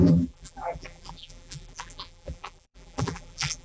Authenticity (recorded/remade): remade